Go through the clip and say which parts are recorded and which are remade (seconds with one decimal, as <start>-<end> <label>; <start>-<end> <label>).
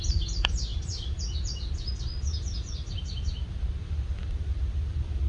0.0-5.3 recorded